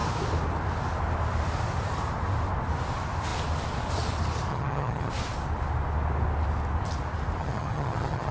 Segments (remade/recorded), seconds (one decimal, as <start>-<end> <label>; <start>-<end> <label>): 0.0-4.5 recorded; 4.5-5.1 remade; 5.1-7.4 recorded; 7.4-8.3 remade